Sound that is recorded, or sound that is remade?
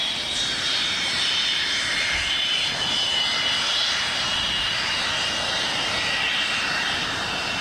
remade